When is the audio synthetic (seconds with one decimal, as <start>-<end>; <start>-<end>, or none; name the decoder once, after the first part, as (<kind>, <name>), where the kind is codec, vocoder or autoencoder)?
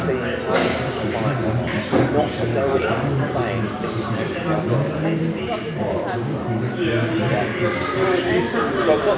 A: 2.5-3.3 (codec, DAC)